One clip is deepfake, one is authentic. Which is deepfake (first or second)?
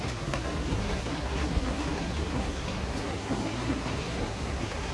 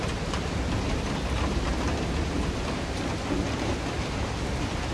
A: first